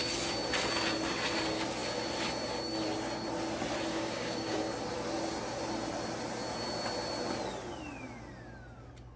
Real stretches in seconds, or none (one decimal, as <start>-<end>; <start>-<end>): 0.0-3.9; 4.6-9.2